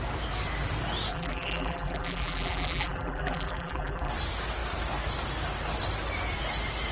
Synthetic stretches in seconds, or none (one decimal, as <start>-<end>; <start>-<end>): 1.1-4.1